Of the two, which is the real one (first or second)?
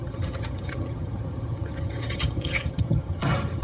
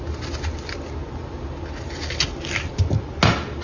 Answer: second